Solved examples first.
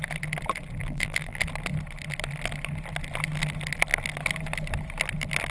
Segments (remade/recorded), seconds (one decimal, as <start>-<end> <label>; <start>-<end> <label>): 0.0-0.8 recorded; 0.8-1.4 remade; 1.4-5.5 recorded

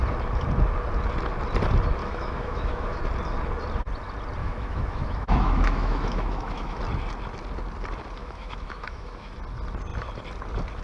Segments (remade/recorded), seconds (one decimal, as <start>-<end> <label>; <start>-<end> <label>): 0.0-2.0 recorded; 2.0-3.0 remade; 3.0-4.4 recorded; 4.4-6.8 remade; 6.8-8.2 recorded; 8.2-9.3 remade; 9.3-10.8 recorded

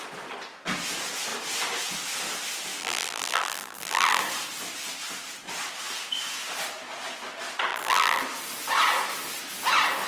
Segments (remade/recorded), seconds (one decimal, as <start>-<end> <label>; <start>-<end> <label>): 0.0-2.8 recorded; 2.8-4.2 remade; 4.2-7.7 recorded; 7.7-8.2 remade; 8.2-10.1 recorded

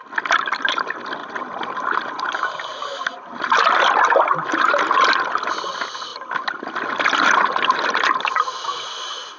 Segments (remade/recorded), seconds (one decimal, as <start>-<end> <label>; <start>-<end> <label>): 0.0-9.4 recorded